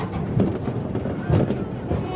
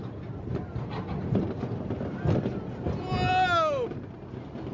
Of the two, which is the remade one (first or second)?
first